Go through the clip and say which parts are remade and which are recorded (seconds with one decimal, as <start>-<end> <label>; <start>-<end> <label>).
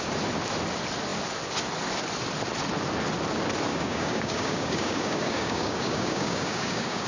0.0-3.7 recorded; 3.7-7.1 remade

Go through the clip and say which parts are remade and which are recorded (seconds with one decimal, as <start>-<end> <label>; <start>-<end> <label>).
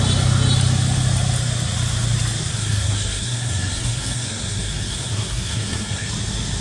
0.0-2.5 recorded; 2.5-6.1 remade; 6.1-6.6 recorded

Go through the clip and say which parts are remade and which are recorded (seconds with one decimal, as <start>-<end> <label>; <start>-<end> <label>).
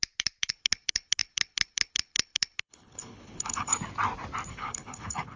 0.0-0.5 recorded; 0.5-3.7 remade; 3.7-4.5 recorded; 4.5-5.4 remade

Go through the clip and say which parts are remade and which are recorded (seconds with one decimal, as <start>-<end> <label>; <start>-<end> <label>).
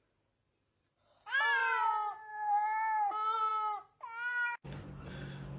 0.0-5.6 recorded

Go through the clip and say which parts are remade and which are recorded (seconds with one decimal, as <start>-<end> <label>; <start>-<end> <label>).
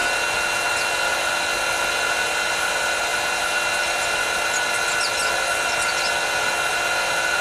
0.0-7.4 recorded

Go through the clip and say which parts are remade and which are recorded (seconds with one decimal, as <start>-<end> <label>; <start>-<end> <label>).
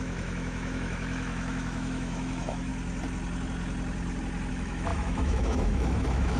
0.0-2.7 remade; 2.7-4.5 recorded; 4.5-6.4 remade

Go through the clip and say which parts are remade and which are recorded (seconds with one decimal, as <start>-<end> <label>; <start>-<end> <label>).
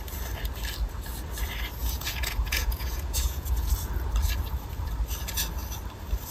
0.0-1.8 recorded; 1.8-3.7 remade; 3.7-6.3 recorded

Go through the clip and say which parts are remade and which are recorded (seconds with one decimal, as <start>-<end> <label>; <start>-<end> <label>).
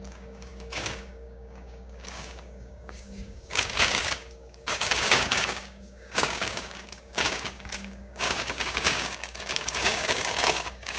0.0-11.0 remade